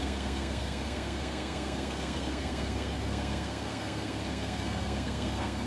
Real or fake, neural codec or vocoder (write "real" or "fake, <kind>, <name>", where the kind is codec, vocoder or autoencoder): fake, codec, SNAC